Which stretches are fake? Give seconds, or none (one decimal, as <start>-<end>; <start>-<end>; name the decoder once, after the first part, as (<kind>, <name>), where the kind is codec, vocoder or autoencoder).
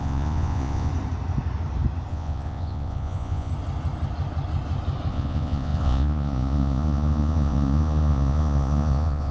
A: 0.0-0.9 (vocoder, Vocos); 2.1-3.5; 5.1-9.3